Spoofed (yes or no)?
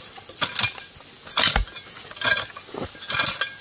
no